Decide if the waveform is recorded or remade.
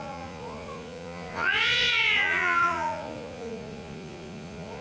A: remade